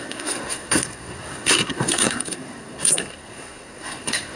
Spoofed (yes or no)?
yes